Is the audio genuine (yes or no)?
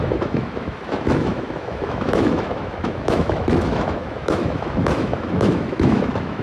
no